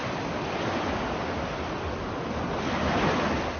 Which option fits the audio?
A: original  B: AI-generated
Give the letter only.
A